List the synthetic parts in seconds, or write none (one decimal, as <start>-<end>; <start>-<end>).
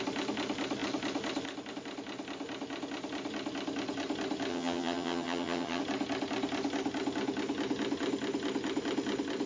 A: 4.5-5.8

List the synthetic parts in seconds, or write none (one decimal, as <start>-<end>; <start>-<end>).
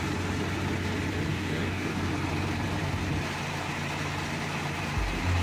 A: 1.3-2.1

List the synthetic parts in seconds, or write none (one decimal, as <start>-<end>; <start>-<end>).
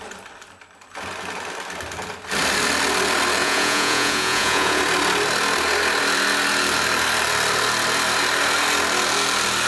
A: 3.4-4.8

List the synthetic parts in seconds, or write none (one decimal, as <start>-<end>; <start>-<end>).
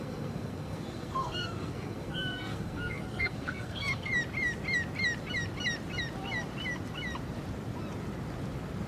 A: 0.0-4.1